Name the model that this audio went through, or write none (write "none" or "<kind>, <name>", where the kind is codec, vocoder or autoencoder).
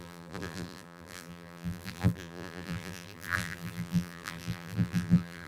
vocoder, BigVGAN v2